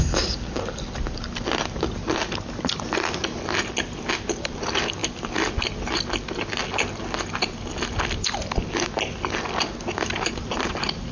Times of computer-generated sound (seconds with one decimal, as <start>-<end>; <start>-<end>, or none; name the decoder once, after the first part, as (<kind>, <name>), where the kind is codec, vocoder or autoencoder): none